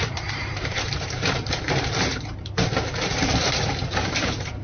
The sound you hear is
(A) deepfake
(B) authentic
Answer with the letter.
A